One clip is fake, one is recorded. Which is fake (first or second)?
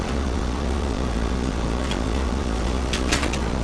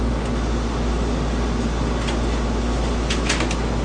first